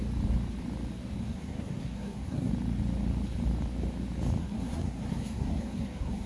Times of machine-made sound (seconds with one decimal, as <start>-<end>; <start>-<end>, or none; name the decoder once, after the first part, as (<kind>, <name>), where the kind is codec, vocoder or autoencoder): 1.2-2.5 (codec, SNAC); 4.4-6.3